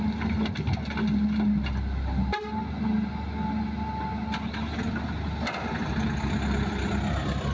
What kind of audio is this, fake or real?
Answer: real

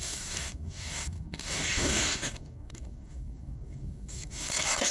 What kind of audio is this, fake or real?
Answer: fake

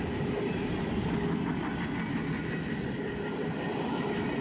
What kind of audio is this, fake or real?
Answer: real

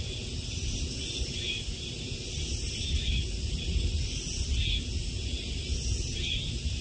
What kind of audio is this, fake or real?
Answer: real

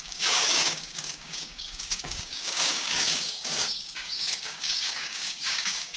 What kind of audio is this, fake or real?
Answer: fake